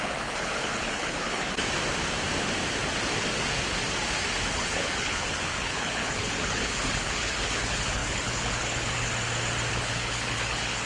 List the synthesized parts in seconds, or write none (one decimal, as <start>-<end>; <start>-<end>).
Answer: 0.0-1.6; 4.5-9.1; 9.7-10.9